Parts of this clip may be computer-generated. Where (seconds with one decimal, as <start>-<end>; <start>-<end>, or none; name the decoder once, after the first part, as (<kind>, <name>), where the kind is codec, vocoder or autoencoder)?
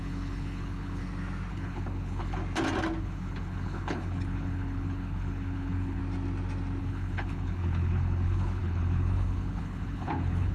0.0-1.0 (codec, HILCodec); 1.5-2.4; 3.0-6.0; 6.8-10.5